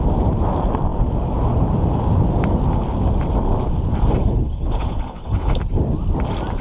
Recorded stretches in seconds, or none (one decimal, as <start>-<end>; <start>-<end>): 0.0-4.2; 5.6-6.6